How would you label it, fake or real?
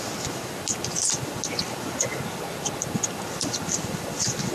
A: real